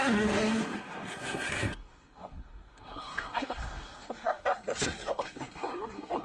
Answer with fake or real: fake